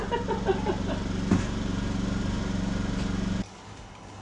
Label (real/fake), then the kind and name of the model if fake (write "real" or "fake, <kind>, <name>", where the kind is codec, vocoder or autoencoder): real